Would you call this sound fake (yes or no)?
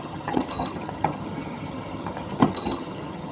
yes